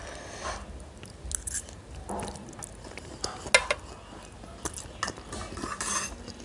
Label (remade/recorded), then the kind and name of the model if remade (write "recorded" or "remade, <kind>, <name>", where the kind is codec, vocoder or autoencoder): recorded